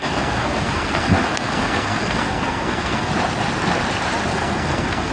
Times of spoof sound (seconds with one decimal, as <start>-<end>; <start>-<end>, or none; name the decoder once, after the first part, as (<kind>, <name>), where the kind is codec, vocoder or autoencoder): 0.0-3.1 (codec, SNAC); 4.3-5.1

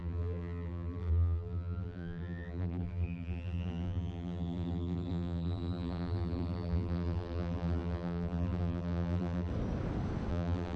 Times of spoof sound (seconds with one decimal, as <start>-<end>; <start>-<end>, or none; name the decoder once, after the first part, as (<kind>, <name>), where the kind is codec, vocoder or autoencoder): 0.0-9.5 (vocoder, BigVGAN v2); 10.3-10.8